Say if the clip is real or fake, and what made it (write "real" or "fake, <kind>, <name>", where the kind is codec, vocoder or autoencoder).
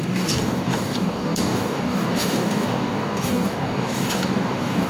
fake, codec, DAC